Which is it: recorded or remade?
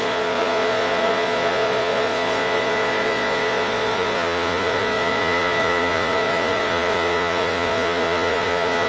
remade